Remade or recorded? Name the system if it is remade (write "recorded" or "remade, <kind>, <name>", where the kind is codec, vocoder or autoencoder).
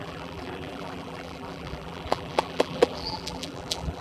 remade, vocoder, BigVGAN v2